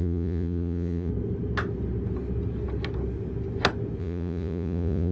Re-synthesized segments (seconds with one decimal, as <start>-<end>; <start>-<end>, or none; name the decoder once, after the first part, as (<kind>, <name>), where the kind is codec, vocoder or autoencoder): 0.0-1.1 (vocoder, Vocos); 4.0-5.1